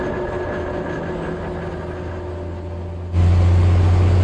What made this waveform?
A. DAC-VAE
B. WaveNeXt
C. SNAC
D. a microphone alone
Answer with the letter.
D